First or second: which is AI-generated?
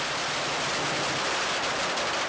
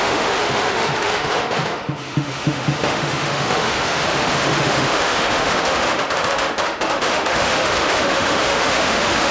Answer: second